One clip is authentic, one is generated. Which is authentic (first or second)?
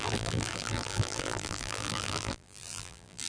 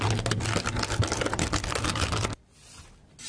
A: second